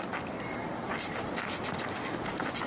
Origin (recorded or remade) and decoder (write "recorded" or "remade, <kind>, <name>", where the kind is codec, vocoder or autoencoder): recorded